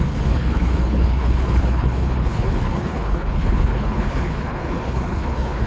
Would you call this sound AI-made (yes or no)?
yes